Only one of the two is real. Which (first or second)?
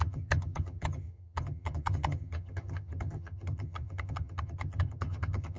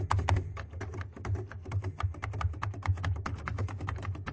second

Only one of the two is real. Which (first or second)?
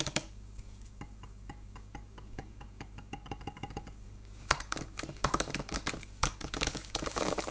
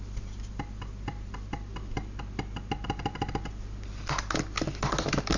second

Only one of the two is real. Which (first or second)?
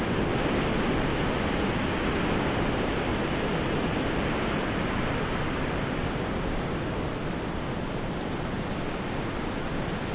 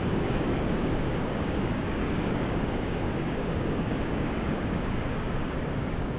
first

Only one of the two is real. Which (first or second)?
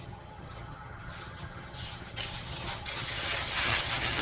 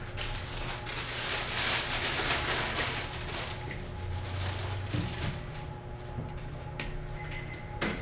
second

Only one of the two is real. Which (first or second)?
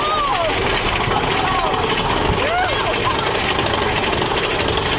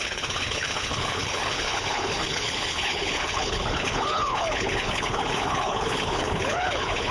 first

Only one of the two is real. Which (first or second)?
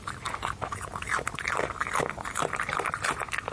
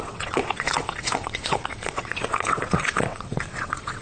first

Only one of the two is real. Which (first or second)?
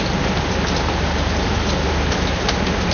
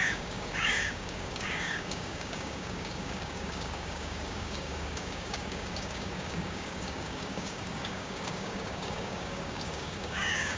first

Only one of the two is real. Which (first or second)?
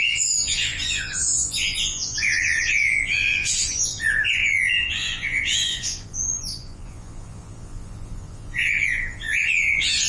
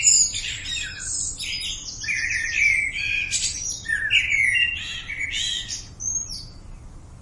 second